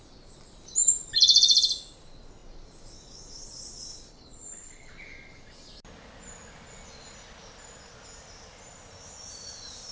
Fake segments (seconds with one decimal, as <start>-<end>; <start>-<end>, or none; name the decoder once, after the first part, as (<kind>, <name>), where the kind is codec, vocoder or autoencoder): 4.1-4.9 (codec, HILCodec)